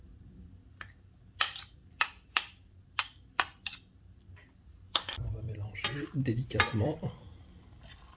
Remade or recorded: remade